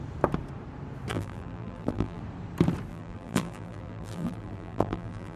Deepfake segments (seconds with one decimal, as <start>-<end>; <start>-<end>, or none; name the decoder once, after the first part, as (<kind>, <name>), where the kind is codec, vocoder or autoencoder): 1.1-2.2 (vocoder, BigVGAN v2); 2.9-5.4